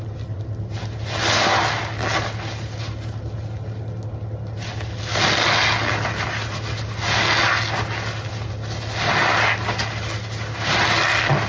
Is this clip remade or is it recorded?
recorded